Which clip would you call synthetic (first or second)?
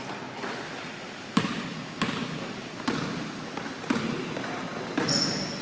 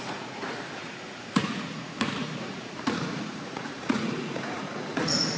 second